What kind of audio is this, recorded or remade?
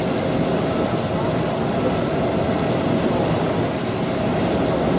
remade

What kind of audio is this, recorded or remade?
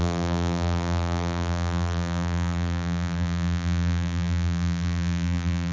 remade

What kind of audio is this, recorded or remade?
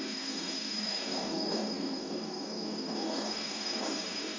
remade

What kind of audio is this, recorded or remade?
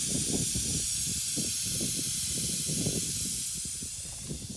recorded